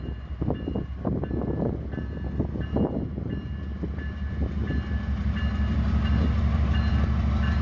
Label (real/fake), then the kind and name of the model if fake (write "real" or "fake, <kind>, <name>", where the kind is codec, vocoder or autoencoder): real